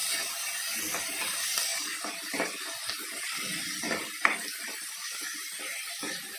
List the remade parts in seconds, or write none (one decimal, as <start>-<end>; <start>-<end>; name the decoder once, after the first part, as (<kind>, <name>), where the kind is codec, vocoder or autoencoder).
1.7-3.4 (vocoder, BigVGAN v2); 5.3-6.4